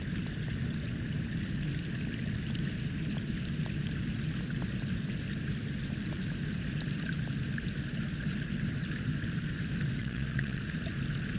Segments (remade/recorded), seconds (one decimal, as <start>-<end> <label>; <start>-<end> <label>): 0.0-10.0 recorded; 10.0-10.6 remade; 10.6-11.4 recorded